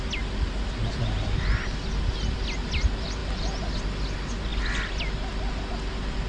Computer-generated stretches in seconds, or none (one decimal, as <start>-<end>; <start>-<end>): none